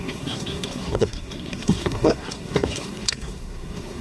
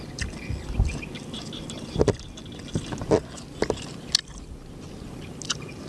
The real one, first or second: second